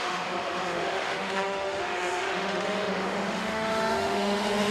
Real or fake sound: fake